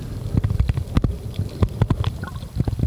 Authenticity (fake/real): real